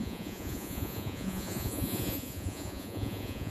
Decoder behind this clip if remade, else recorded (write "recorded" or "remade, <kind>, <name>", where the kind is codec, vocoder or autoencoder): remade, vocoder, Vocos